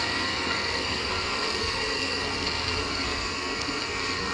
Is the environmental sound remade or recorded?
remade